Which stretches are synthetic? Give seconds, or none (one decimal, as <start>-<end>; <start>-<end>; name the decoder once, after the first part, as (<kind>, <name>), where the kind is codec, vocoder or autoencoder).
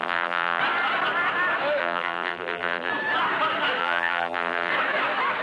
0.0-0.6 (vocoder, BigVGAN v2); 1.8-2.9; 3.8-4.7